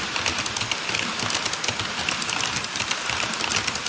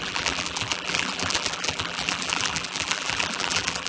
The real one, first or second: first